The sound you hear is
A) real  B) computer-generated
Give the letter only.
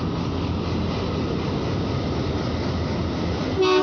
A